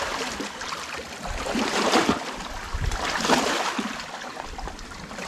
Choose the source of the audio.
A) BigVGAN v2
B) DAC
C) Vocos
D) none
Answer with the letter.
D